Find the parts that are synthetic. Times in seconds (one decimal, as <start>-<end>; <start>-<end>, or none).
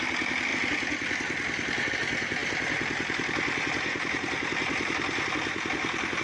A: none